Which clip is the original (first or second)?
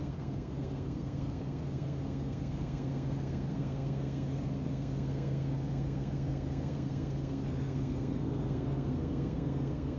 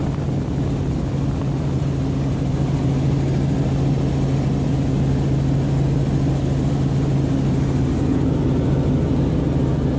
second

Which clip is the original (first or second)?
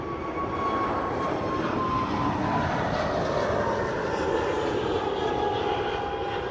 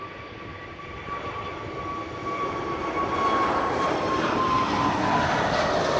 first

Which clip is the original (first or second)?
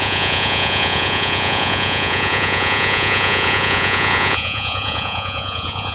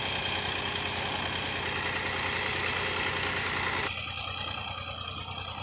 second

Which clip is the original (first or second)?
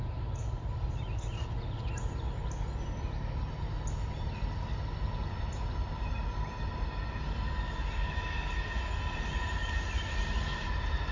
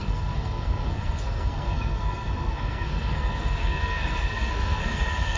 first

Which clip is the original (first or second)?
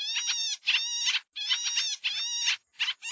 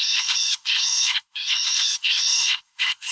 first